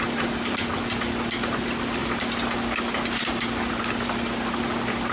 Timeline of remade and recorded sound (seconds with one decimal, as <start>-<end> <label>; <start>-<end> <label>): 0.0-5.1 remade